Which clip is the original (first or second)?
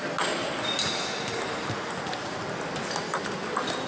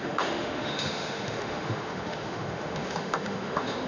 first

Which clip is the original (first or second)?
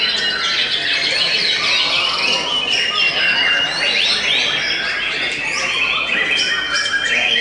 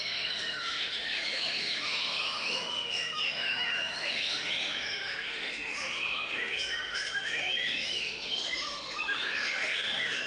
first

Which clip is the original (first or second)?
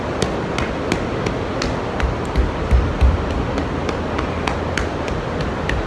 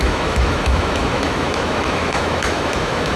first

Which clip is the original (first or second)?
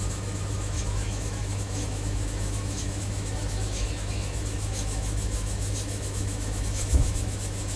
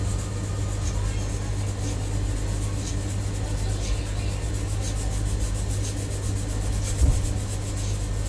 second